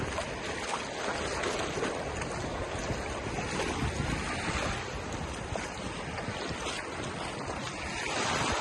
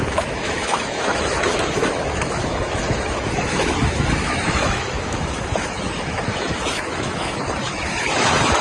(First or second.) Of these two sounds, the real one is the first